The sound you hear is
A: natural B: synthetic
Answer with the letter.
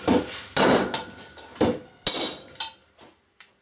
A